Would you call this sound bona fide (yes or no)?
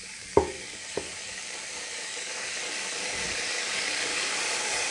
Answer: no